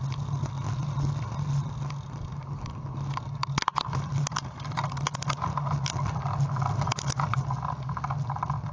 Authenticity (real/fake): real